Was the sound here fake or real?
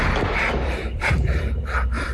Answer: fake